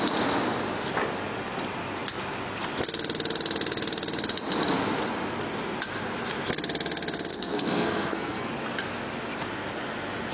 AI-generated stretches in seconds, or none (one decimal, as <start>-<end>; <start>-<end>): 7.3-8.5